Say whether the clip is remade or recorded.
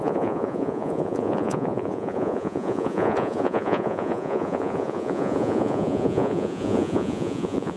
remade